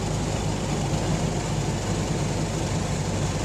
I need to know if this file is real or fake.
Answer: real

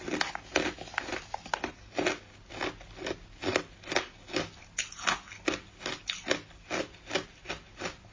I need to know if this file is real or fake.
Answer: real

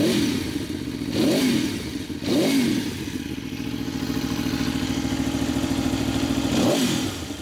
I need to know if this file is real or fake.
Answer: fake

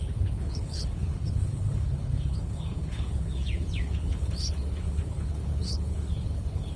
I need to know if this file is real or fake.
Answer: fake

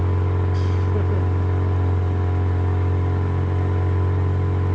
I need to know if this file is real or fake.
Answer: real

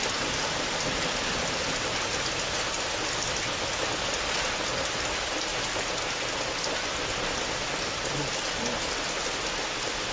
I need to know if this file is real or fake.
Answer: real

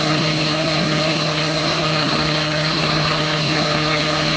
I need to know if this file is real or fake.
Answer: fake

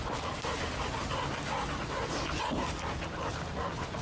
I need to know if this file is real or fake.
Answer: real